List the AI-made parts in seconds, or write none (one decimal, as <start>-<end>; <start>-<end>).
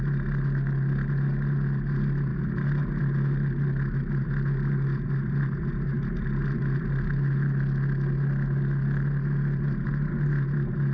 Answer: none